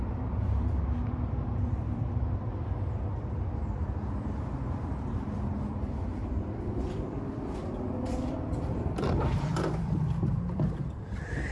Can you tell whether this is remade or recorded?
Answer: remade